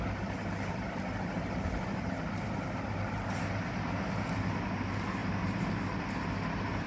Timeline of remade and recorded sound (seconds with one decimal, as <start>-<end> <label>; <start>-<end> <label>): 0.0-5.2 recorded; 5.2-6.0 remade; 6.0-6.9 recorded